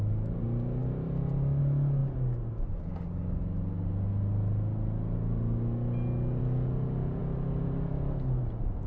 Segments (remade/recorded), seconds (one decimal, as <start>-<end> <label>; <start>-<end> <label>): 0.0-8.9 recorded